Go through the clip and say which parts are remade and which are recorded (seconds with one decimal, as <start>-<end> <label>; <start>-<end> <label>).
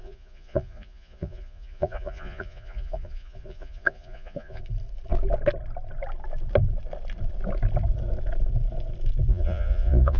0.0-4.6 remade; 4.6-9.3 recorded; 9.3-10.2 remade